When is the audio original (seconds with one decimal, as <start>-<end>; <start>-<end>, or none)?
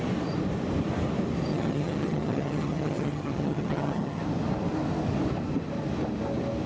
0.0-1.5; 4.2-6.7